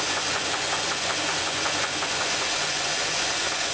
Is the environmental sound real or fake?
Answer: fake